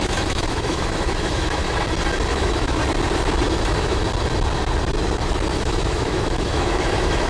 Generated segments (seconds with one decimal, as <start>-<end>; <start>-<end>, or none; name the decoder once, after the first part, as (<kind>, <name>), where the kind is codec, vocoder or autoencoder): 0.0-1.6 (autoencoder, DAC-VAE); 2.3-2.8; 3.5-4.0; 5.6-7.3